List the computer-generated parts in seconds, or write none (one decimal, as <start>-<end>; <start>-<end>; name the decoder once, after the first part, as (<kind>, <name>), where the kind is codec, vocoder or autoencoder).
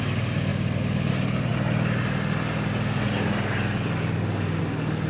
none